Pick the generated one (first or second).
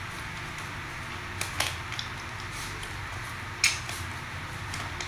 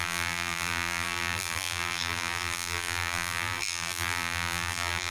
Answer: second